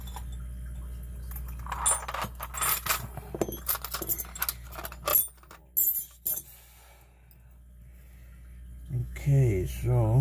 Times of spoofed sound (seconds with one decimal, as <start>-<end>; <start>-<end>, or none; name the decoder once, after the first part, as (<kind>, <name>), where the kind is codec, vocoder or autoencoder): 9.0-9.7 (autoencoder, DAC-VAE)